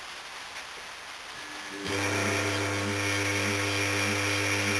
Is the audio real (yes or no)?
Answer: yes